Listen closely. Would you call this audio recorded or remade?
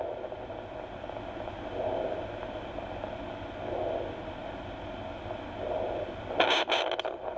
recorded